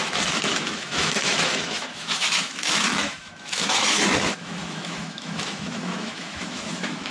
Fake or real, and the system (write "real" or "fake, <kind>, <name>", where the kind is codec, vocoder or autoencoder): fake, autoencoder, DAC-VAE